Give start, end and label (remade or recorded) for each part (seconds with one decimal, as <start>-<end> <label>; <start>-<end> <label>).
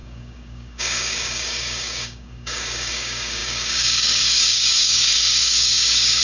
0.0-6.2 remade